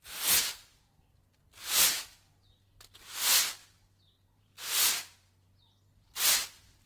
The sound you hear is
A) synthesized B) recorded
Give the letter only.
B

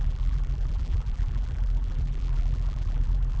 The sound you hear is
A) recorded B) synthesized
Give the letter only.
B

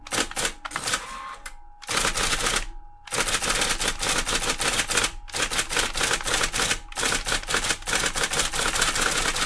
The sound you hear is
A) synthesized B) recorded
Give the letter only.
B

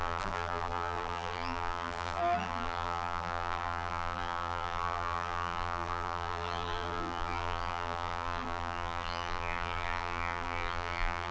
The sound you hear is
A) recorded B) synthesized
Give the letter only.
B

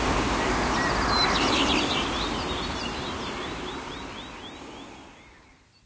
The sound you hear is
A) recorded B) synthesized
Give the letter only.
A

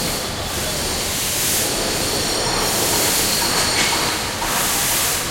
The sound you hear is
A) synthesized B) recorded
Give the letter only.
A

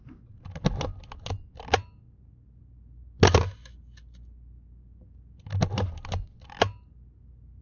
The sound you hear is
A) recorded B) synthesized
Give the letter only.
A